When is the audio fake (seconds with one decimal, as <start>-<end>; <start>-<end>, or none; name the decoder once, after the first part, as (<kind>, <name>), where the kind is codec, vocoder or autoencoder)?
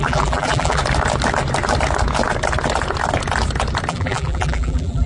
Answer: 0.0-0.8 (vocoder, BigVGAN v2); 3.9-5.1